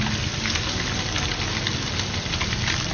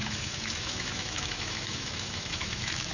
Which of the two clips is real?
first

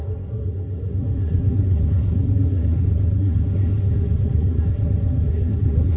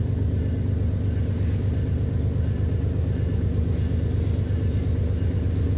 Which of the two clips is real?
second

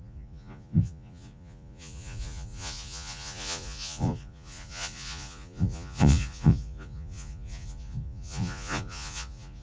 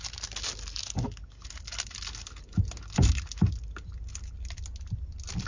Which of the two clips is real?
second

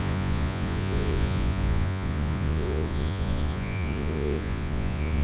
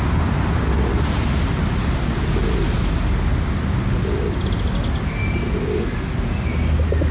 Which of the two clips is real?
second